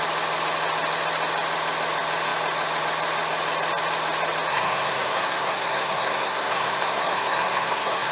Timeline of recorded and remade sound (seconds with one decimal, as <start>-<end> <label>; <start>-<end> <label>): 0.0-4.5 recorded; 4.5-8.1 remade